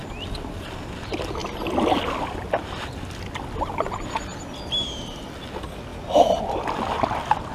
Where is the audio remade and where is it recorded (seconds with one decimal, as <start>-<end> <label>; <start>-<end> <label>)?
0.0-7.5 recorded